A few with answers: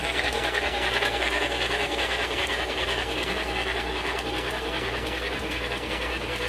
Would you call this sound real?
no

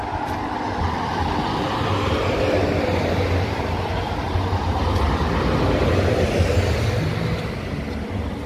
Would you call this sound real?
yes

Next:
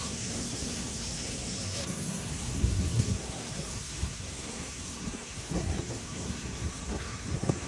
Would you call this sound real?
no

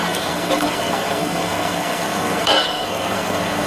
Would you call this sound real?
no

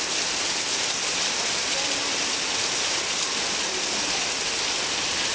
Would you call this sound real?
yes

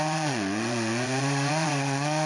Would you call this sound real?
no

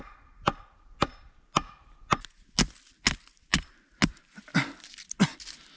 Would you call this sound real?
yes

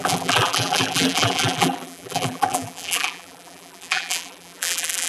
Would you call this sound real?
no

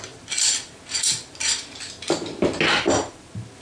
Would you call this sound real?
yes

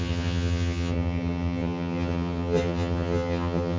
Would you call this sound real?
no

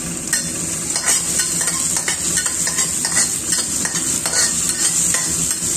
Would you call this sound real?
yes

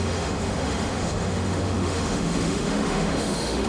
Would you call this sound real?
no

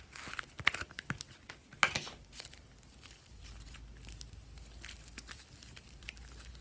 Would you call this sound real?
yes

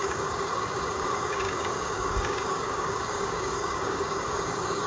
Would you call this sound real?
no